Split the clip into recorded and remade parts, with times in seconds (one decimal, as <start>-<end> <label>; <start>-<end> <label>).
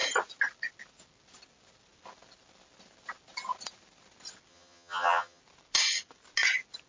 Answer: 0.0-4.5 recorded; 4.5-5.4 remade; 5.4-6.9 recorded